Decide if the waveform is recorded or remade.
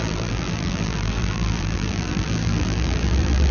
remade